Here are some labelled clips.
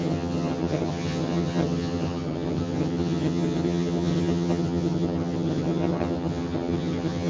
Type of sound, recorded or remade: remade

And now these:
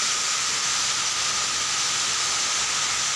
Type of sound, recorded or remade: recorded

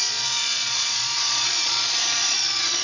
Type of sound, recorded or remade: remade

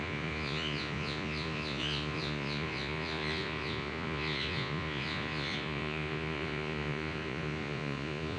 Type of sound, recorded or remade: remade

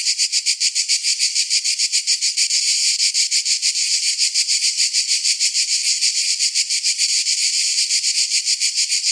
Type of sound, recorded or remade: remade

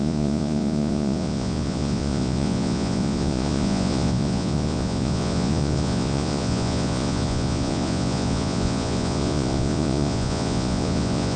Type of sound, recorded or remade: remade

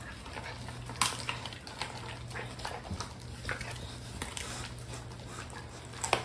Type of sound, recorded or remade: recorded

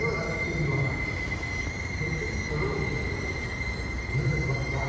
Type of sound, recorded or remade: recorded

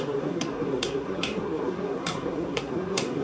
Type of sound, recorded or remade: remade